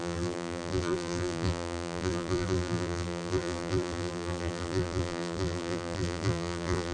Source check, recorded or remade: remade